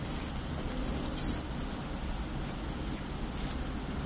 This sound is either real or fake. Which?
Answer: real